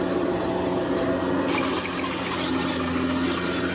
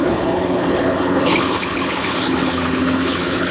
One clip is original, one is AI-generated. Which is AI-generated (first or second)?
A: second